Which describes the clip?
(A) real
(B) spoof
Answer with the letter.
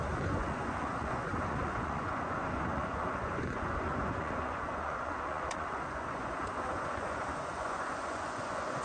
B